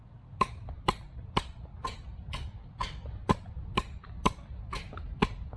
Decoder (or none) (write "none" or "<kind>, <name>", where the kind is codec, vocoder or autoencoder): none